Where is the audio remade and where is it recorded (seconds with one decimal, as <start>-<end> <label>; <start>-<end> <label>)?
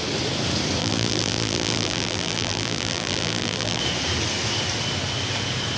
0.0-0.8 recorded; 0.8-3.8 remade; 3.8-5.8 recorded